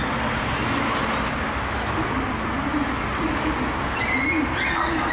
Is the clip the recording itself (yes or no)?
yes